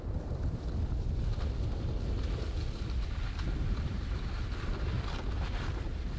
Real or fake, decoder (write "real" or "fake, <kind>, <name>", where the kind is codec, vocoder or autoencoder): real